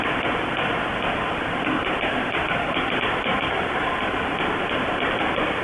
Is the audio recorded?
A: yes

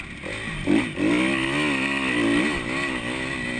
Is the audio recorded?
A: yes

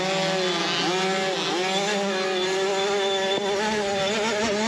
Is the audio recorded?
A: yes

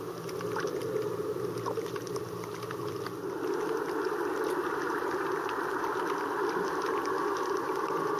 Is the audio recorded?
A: yes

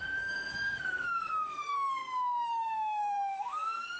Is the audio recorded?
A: no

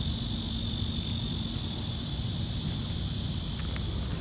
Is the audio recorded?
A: yes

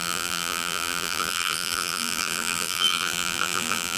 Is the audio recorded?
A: no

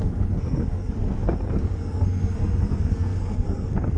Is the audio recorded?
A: no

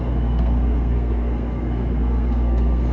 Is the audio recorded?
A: no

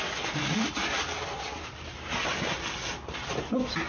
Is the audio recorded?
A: yes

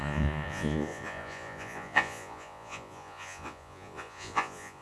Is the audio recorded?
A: no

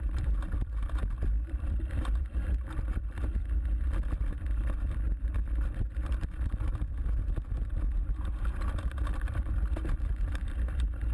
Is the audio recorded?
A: no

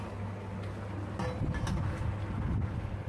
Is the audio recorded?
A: yes